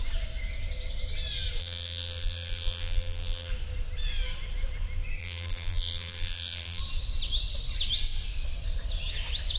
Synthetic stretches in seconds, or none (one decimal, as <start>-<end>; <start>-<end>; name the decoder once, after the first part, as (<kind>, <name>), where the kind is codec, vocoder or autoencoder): 1.6-3.5 (vocoder, BigVGAN v2); 5.2-6.8